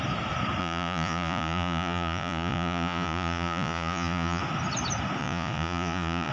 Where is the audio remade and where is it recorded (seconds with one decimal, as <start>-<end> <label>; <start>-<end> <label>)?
0.0-0.6 recorded; 0.6-4.4 remade; 4.4-5.2 recorded; 5.2-6.3 remade